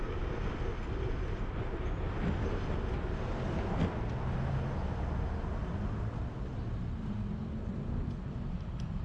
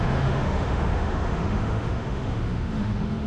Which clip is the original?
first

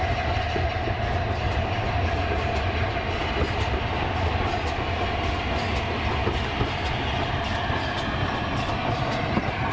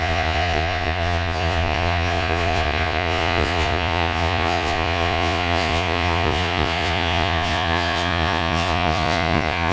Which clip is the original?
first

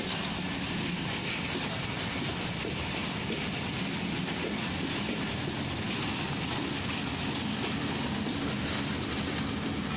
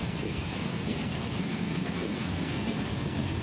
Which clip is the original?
first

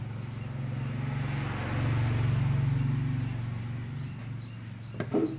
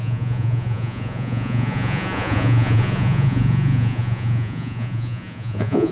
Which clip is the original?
first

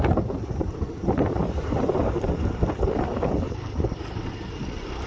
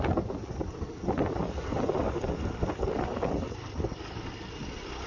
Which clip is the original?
second